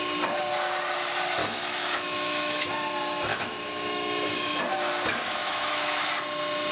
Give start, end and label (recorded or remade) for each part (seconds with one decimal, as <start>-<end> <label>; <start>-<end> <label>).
0.0-1.4 recorded; 1.4-2.7 remade; 2.7-3.3 recorded; 3.3-4.6 remade; 4.6-5.4 recorded; 5.4-6.1 remade; 6.1-6.7 recorded